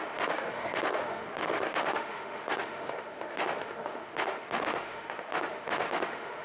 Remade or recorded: remade